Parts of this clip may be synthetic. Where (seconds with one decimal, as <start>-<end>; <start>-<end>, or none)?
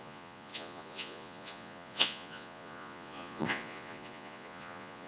0.0-5.1